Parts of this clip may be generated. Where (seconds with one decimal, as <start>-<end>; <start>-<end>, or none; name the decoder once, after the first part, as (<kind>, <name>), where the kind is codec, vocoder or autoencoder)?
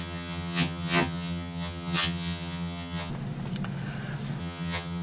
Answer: 0.0-3.1 (vocoder, HiFi-GAN); 4.4-5.0